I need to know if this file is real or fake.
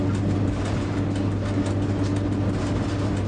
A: real